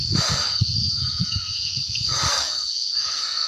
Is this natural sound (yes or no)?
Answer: no